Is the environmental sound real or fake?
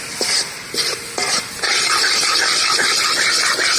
real